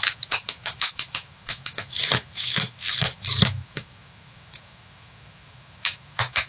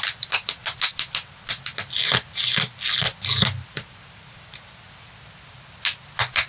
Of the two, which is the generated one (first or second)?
first